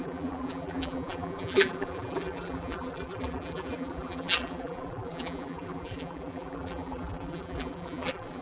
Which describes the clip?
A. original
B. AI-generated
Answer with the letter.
B